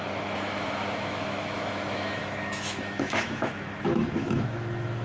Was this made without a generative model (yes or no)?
no